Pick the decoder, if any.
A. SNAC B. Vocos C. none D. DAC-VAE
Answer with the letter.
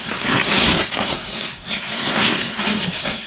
A